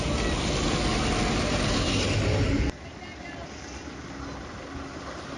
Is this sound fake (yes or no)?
no